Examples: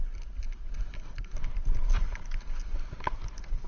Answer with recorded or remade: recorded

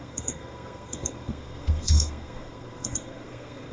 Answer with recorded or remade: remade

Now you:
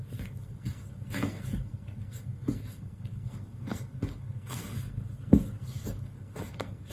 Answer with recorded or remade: remade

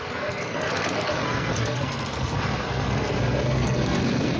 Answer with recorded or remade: remade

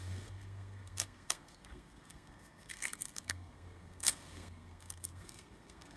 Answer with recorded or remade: remade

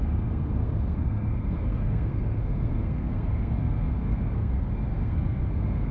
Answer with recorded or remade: remade